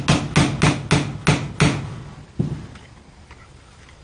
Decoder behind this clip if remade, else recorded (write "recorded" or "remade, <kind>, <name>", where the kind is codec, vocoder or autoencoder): recorded